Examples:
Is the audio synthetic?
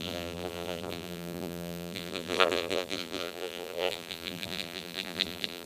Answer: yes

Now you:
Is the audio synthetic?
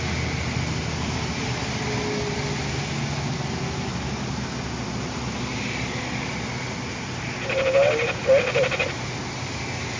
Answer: no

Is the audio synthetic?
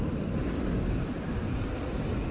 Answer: no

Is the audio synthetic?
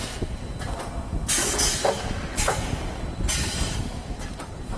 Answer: no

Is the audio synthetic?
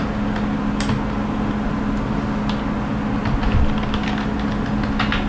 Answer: no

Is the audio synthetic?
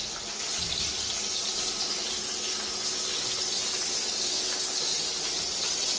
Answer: no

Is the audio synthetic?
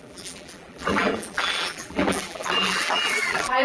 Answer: yes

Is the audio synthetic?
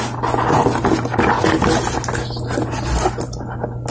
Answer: no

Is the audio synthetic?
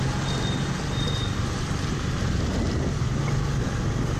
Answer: no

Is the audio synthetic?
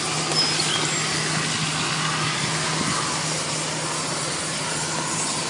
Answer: no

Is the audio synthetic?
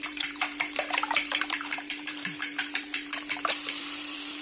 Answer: yes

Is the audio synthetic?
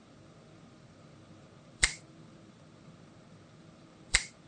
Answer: yes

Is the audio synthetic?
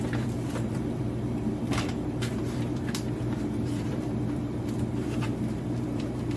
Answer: yes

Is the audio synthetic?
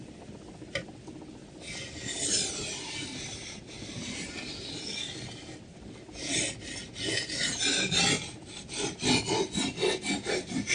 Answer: no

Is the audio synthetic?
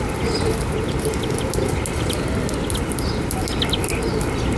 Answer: no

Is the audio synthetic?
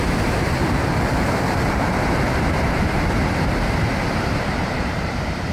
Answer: yes